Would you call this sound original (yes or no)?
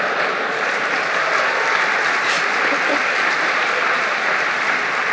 no